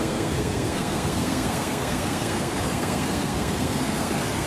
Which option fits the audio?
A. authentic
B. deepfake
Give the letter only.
B